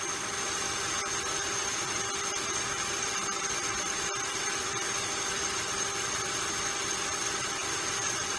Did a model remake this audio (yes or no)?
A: no